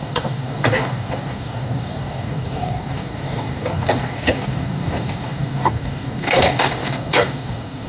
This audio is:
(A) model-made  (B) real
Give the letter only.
A